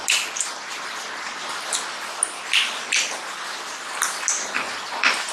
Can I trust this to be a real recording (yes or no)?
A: yes